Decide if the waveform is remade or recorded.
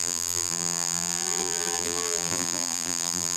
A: remade